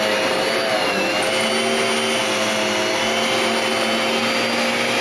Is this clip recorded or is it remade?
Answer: recorded